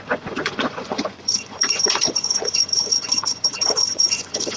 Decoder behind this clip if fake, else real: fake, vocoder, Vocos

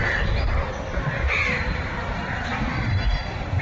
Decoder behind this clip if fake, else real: fake, vocoder, BigVGAN v2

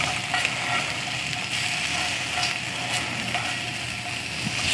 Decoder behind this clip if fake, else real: real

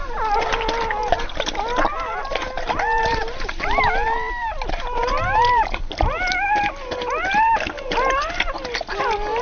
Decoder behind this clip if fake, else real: real